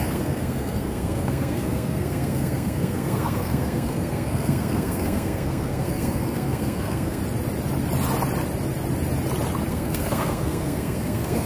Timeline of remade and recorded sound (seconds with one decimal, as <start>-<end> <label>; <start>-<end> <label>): 0.0-7.2 remade; 7.2-9.7 recorded; 9.7-11.5 remade